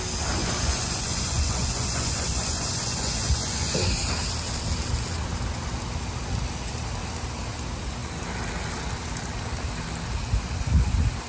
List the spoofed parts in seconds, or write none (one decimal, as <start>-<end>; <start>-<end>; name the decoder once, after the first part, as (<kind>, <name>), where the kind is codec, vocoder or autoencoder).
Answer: 0.4-3.9 (vocoder, Vocos)